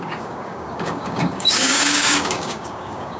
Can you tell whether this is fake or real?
fake